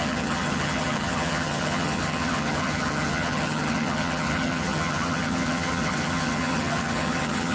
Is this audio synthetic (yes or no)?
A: yes